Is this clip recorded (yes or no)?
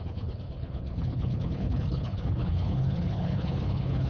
no